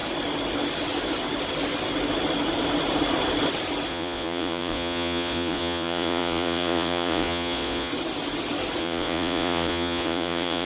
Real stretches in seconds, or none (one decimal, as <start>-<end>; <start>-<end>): 0.0-3.9; 7.9-8.8